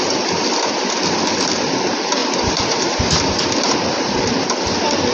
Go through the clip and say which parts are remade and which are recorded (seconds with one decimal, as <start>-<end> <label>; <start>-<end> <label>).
0.0-2.2 recorded; 2.2-4.3 remade; 4.3-5.1 recorded